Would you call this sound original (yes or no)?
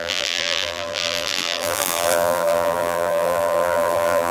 no